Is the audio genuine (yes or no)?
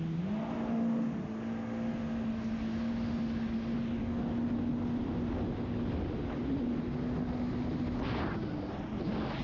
yes